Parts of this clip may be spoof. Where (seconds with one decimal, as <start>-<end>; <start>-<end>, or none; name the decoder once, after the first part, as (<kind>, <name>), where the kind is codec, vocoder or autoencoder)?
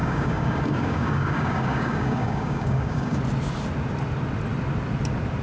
0.0-3.2 (codec, DAC)